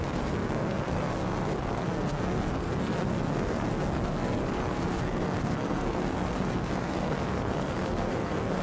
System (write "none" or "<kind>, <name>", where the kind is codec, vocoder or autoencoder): codec, SNAC